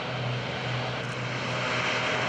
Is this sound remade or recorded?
recorded